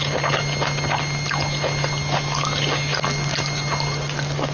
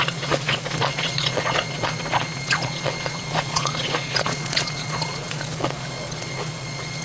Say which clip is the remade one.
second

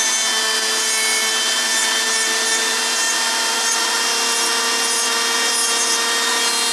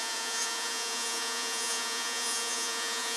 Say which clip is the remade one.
second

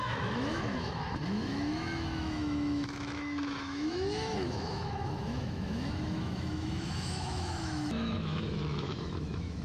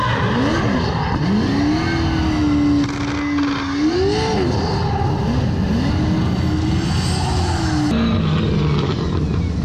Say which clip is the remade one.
first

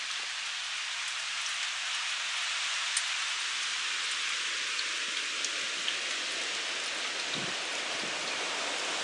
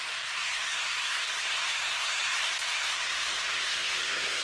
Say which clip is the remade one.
second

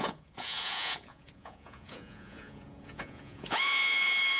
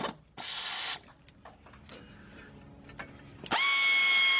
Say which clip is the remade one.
first